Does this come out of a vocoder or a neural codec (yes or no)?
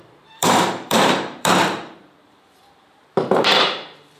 yes